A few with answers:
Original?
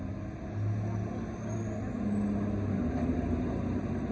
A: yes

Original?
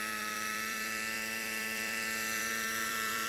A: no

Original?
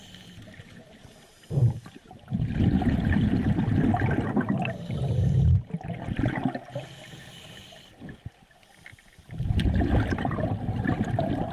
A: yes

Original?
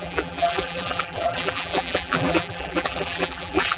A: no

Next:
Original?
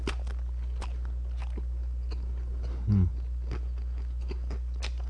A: yes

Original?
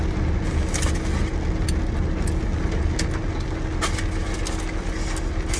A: yes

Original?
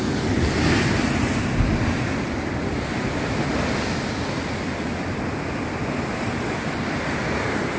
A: yes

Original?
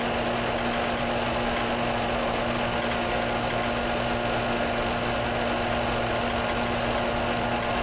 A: yes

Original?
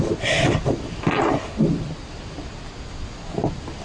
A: yes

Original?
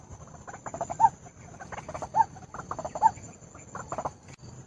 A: yes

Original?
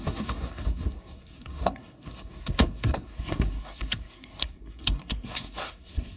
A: no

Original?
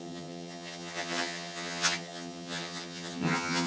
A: no